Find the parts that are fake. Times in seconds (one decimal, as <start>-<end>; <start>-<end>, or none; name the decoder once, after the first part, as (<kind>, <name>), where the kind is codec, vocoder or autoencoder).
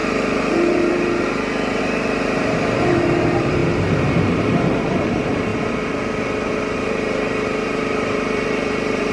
0.0-3.6 (vocoder, BigVGAN v2); 4.3-5.5; 6.6-9.1